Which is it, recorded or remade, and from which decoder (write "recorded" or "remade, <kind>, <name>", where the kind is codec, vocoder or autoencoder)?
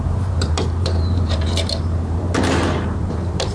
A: remade, vocoder, BigVGAN v2